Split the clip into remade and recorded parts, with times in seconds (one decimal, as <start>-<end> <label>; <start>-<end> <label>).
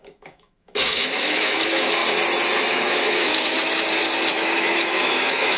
0.0-2.0 remade; 2.0-2.7 recorded; 2.7-3.3 remade; 3.3-4.3 recorded; 4.3-5.6 remade